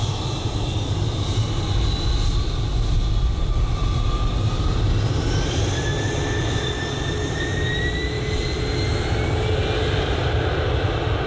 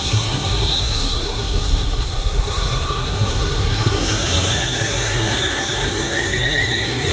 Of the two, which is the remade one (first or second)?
second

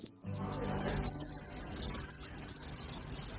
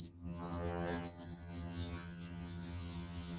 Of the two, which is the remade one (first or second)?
second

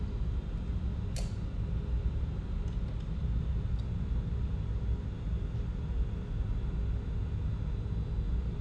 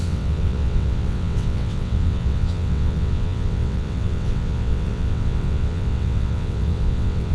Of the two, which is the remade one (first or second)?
second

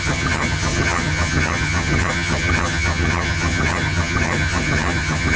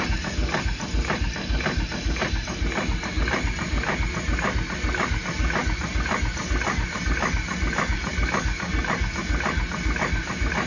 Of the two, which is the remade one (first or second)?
first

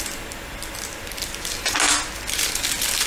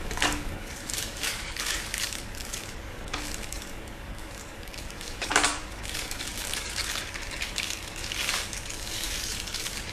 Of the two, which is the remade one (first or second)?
second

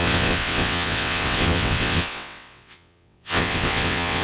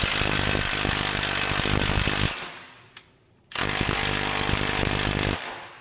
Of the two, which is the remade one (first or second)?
first